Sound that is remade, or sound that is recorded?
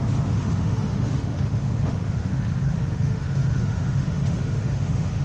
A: remade